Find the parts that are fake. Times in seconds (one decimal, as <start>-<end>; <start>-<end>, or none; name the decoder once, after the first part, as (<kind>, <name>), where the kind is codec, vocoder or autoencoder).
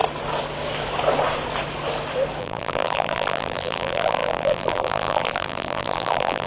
2.4-6.5 (vocoder, BigVGAN v2)